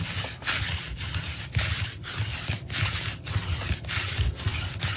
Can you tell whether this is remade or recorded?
recorded